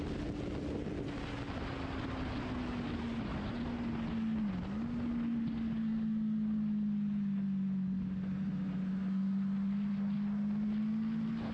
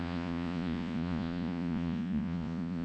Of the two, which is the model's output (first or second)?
second